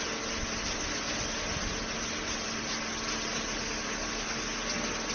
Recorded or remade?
recorded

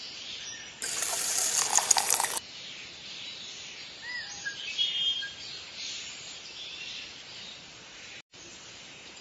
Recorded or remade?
remade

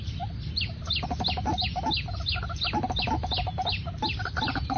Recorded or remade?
recorded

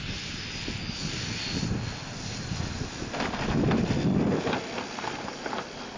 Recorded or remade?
recorded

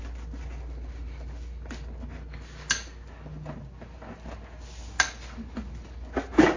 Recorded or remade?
recorded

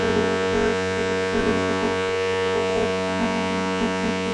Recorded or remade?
remade